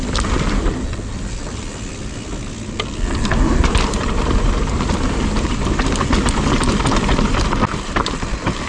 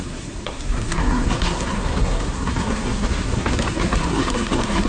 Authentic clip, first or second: first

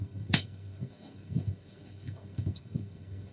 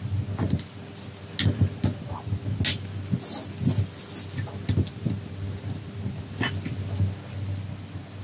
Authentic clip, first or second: second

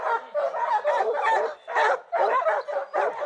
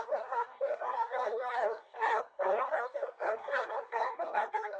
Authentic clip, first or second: first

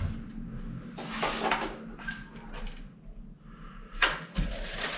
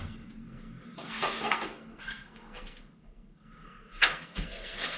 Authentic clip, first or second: first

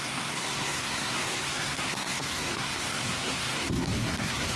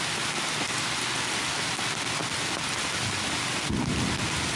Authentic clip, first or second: second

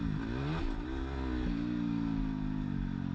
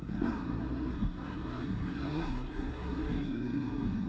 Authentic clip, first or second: first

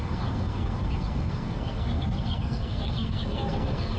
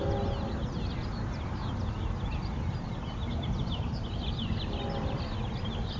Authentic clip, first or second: second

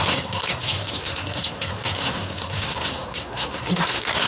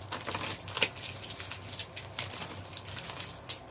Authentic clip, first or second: second